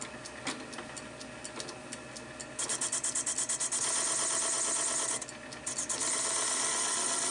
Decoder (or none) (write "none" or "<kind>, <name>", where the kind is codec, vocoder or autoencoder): none